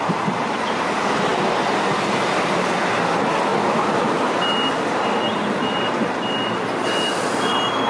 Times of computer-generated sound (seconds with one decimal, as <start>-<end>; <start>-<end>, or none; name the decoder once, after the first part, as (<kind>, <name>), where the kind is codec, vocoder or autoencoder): none